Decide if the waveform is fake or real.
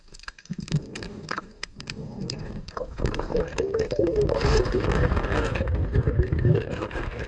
fake